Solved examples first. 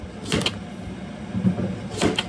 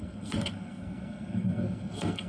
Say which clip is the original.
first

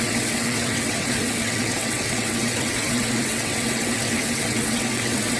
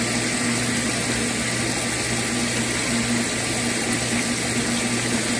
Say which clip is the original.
second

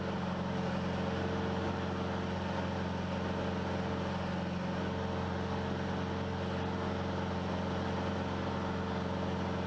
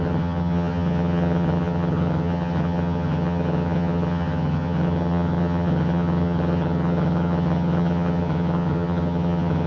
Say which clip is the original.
first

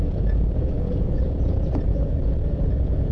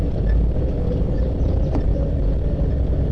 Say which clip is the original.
second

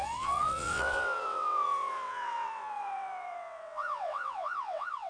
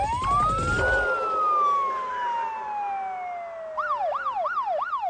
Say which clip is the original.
second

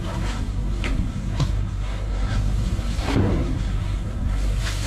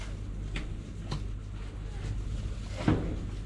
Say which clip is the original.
second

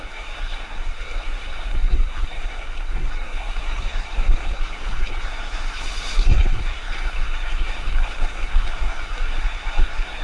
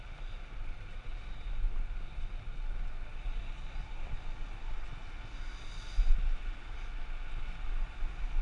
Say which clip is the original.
second